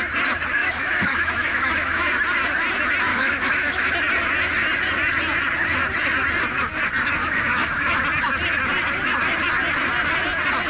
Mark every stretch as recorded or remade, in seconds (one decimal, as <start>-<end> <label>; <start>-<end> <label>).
0.0-0.6 recorded; 0.6-2.1 remade; 2.1-3.1 recorded; 3.1-3.9 remade; 3.9-7.2 recorded; 7.2-8.0 remade; 8.0-10.7 recorded